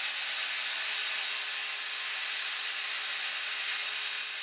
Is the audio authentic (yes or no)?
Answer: yes